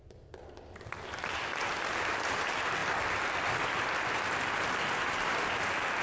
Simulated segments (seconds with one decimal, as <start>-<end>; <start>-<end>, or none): none

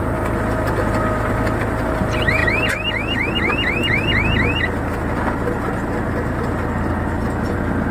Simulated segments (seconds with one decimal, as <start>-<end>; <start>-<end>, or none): none

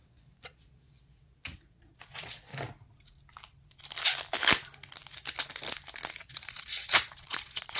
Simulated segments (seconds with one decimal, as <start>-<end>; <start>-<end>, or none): 0.0-2.5; 6.2-7.8

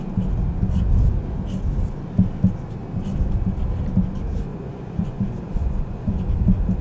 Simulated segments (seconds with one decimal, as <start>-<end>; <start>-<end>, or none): 4.5-6.2

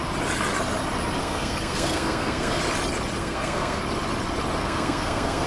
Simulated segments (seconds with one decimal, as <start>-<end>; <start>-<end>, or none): 1.2-2.6; 3.2-3.8; 4.6-5.5

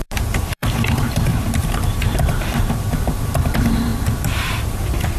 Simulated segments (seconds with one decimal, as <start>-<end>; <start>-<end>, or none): 0.0-3.9; 4.7-5.2

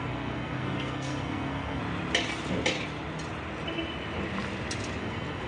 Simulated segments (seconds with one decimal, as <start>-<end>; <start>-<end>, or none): 0.0-1.8; 5.0-5.5